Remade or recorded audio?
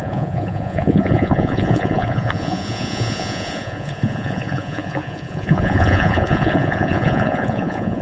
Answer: remade